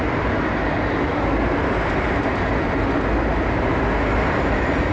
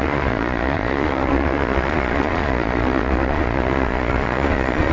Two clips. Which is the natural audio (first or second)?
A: first